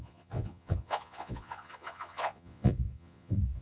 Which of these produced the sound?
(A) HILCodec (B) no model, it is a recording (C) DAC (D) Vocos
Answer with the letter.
D